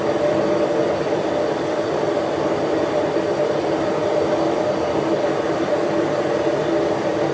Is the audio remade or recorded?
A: recorded